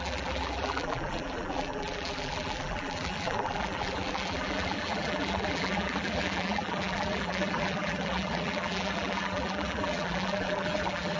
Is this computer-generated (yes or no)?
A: yes